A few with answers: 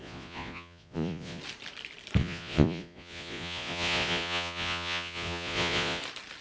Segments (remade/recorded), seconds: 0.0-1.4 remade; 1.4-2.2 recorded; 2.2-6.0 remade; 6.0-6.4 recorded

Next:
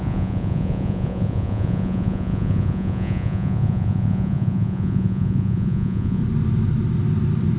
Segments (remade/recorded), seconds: 0.0-6.2 remade; 6.2-7.6 recorded

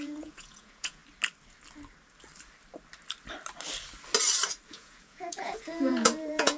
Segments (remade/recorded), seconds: 0.0-1.0 remade; 1.0-4.7 recorded; 4.7-6.6 remade

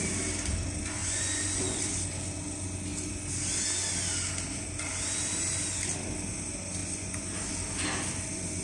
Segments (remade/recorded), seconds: 0.0-1.0 recorded; 1.0-2.0 remade; 2.0-6.8 recorded; 6.8-7.5 remade; 7.5-8.6 recorded

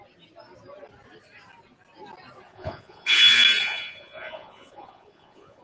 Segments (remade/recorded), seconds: 0.0-2.5 recorded; 2.5-3.2 remade; 3.2-3.6 recorded; 3.6-5.6 remade

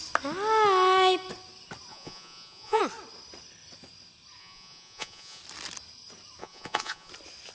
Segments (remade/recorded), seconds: 0.0-1.9 recorded; 1.9-2.8 remade; 2.8-4.4 recorded; 4.4-5.4 remade; 5.4-6.4 recorded; 6.4-7.1 remade; 7.1-7.5 recorded

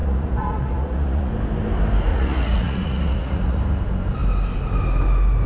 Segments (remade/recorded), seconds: 0.0-1.3 remade; 1.3-2.1 recorded; 2.1-3.6 remade; 3.6-5.5 recorded

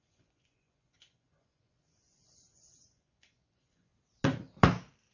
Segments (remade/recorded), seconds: 0.0-3.9 remade; 3.9-5.1 recorded